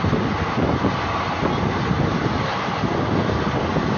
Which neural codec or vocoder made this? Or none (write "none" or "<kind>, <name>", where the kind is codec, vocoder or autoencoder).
none